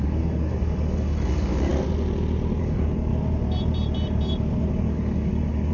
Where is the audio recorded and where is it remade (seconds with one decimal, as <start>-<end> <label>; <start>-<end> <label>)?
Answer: 0.0-1.7 remade; 1.7-2.6 recorded; 2.6-3.1 remade; 3.1-4.7 recorded; 4.7-5.7 remade